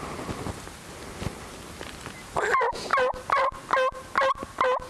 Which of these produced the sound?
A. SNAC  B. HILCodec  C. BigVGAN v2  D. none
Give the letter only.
D